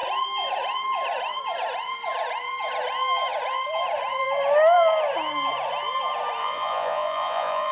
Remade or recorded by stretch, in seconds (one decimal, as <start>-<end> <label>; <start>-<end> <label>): 0.0-6.4 recorded; 6.4-7.7 remade